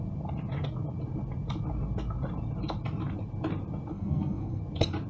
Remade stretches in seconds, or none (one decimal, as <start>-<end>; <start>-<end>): 3.9-4.6